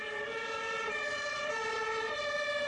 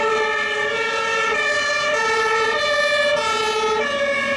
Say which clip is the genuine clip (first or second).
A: second